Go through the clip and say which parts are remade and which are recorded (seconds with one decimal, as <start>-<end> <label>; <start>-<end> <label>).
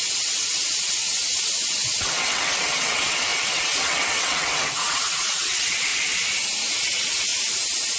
0.0-5.9 remade; 5.9-6.7 recorded; 6.7-7.3 remade; 7.3-8.0 recorded